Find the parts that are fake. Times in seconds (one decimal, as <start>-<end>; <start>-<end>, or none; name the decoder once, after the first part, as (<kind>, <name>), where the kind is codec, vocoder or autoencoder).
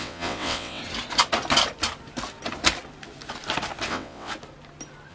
0.0-0.8 (vocoder, WaveNeXt); 3.9-4.3